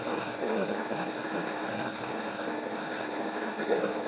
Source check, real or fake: fake